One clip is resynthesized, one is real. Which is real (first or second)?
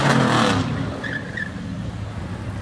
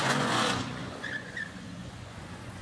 first